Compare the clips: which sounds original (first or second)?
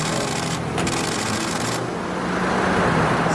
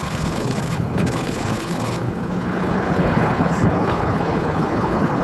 first